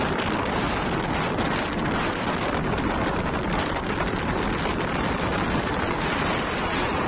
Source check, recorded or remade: recorded